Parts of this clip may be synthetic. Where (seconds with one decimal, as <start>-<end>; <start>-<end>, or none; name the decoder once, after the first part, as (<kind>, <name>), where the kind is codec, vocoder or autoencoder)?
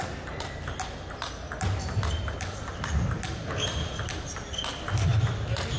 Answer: none